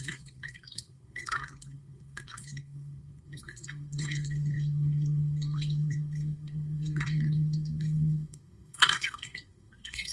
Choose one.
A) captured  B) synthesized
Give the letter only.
B